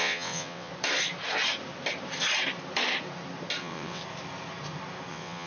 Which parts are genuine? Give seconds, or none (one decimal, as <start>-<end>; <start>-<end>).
0.7-3.6; 4.0-5.1